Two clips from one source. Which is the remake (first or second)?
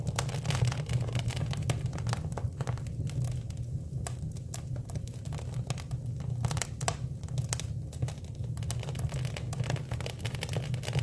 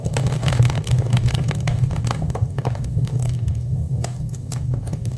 second